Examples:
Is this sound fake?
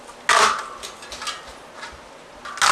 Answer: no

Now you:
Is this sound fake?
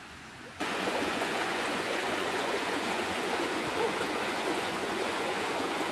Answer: yes